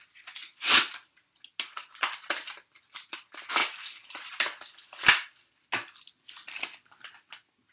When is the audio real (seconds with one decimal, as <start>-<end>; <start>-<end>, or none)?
0.0-2.0; 2.8-3.6; 5.5-7.7